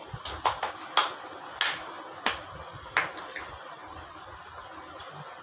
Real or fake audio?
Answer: real